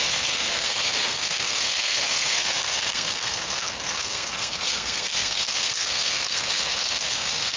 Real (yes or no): no